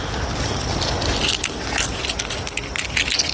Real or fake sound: real